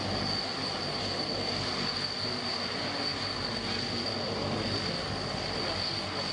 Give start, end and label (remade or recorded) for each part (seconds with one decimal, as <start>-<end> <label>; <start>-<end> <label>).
0.0-6.3 recorded